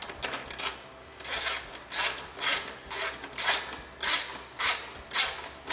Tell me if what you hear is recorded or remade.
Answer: recorded